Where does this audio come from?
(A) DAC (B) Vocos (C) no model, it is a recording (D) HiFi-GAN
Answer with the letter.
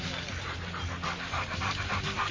C